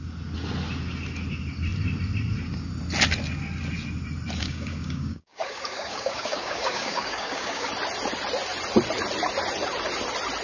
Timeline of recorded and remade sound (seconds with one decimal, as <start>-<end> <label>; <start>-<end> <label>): 0.0-4.4 recorded; 4.4-7.7 remade; 7.7-10.4 recorded